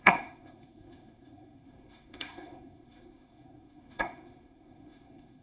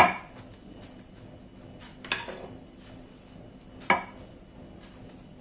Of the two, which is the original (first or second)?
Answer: second